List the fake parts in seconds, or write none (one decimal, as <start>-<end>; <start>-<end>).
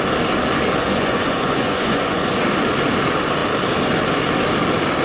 0.8-2.3